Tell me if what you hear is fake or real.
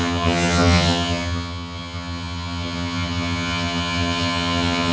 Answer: fake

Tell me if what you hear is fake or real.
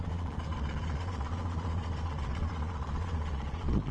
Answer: fake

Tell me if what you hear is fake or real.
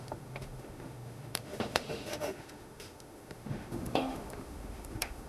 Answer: fake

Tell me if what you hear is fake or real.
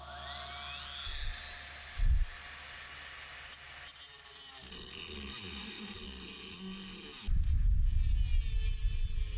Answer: real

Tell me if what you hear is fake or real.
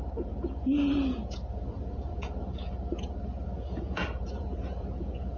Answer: fake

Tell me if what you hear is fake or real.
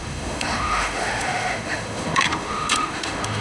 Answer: fake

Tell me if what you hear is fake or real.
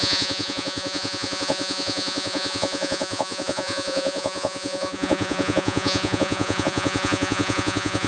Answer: fake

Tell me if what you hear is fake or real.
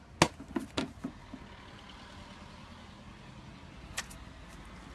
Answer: real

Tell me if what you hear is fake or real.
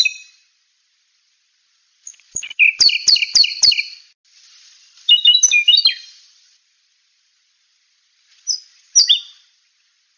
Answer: real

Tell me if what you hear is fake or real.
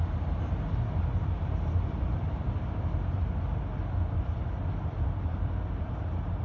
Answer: real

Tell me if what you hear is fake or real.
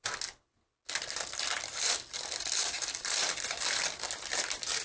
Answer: real